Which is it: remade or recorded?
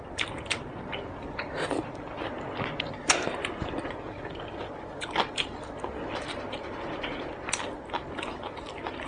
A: remade